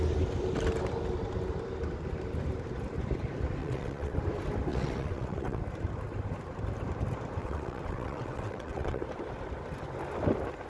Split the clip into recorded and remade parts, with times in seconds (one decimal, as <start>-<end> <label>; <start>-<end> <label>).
0.0-3.6 recorded; 3.6-4.2 remade; 4.2-4.7 recorded; 4.7-5.6 remade; 5.6-7.4 recorded; 7.4-9.0 remade; 9.0-10.7 recorded